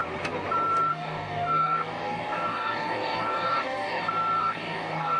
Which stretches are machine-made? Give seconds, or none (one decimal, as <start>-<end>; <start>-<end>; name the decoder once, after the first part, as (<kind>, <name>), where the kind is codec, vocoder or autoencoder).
0.9-4.0 (codec, DAC); 4.4-5.2